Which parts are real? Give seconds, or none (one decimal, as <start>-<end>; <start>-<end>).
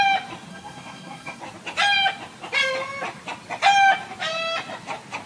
0.0-0.5; 1.4-5.3